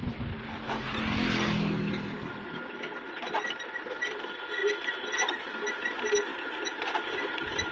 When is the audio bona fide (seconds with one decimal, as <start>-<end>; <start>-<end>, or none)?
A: 0.0-4.6; 5.3-6.3

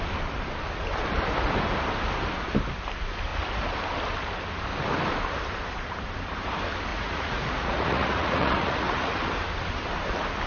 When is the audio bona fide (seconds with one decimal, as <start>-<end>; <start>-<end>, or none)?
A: 0.0-6.9; 9.2-10.5

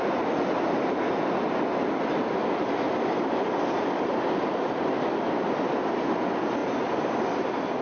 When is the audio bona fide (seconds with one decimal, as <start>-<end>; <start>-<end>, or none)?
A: 0.0-7.8

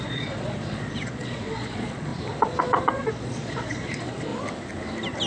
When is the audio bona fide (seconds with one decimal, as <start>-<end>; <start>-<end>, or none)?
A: 2.1-2.9; 4.3-5.3

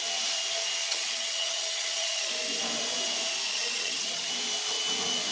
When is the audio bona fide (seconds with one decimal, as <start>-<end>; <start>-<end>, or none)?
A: 0.0-0.8; 2.3-3.5; 4.3-5.3